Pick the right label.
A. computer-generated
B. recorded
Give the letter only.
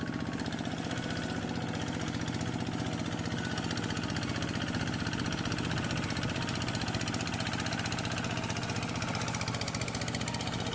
B